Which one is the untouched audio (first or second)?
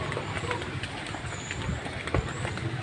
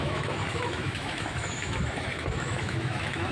first